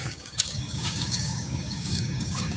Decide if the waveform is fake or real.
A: fake